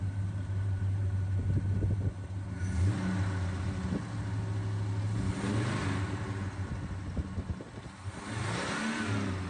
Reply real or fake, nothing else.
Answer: real